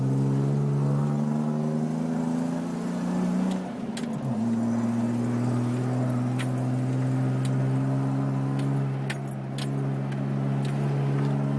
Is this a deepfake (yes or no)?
no